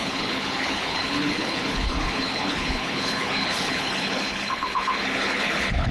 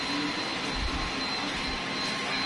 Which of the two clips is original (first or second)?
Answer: second